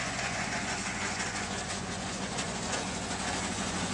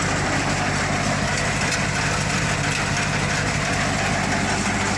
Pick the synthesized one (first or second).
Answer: first